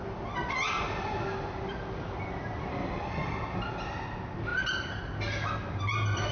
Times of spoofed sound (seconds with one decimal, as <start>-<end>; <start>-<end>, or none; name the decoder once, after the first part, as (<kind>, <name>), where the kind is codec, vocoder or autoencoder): none